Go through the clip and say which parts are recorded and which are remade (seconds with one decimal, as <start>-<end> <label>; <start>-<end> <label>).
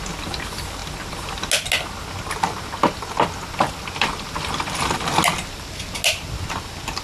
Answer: 0.0-7.0 recorded